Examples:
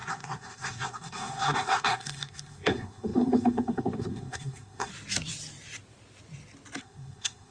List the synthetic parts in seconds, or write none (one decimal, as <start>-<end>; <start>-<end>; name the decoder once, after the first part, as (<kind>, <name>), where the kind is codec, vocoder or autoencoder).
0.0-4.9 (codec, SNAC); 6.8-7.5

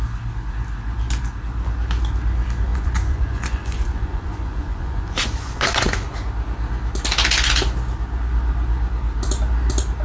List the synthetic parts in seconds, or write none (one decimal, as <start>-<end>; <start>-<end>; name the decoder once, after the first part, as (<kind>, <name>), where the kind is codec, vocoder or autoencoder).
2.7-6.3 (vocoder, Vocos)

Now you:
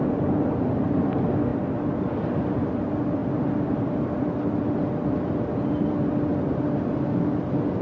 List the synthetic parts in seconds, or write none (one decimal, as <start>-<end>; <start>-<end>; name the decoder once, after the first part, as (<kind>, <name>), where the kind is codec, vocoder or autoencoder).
none